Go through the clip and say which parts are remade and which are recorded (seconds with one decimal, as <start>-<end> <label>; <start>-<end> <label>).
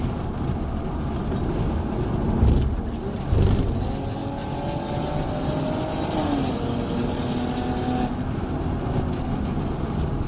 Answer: 0.0-10.3 recorded